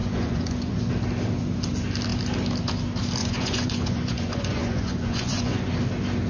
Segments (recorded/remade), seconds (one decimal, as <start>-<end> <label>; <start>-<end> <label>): 0.0-0.9 remade; 0.9-3.2 recorded; 3.2-5.7 remade; 5.7-6.3 recorded